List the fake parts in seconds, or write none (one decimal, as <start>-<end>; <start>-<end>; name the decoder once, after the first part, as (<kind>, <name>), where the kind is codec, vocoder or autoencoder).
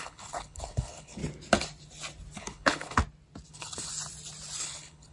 0.0-1.2 (codec, HILCodec); 2.4-3.0; 3.5-3.9; 4.6-5.1